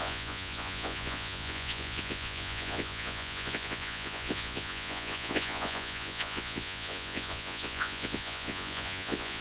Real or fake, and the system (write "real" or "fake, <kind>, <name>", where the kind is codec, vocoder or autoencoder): fake, vocoder, Vocos